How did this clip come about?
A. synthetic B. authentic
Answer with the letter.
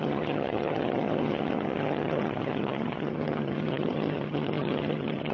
A